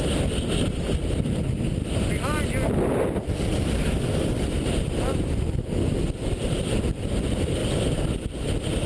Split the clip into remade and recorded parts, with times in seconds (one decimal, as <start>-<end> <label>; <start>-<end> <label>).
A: 0.0-8.9 recorded